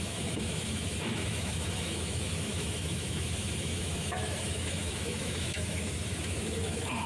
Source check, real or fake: fake